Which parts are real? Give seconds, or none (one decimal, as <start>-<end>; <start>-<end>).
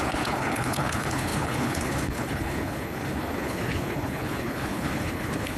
none